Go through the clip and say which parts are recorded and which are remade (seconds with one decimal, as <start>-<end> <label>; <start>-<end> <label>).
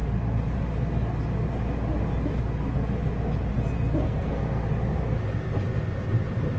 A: 0.0-4.0 recorded; 4.0-4.6 remade; 4.6-6.6 recorded